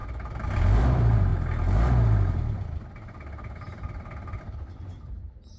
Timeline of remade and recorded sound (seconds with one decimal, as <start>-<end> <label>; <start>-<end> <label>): 0.0-0.8 recorded; 0.8-1.3 remade; 1.3-4.4 recorded; 4.4-5.6 remade